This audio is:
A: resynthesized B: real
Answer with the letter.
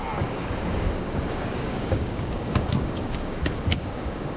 A